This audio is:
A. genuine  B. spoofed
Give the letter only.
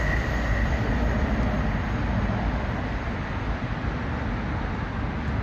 A